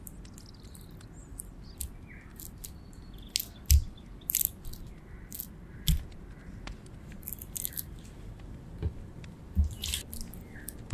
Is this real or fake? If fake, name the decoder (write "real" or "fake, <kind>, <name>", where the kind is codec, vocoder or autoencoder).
real